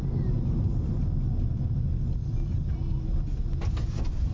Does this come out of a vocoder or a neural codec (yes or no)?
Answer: no